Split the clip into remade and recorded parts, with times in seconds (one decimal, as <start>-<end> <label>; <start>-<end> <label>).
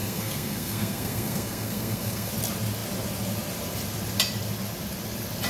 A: 0.0-2.3 remade; 2.3-5.5 recorded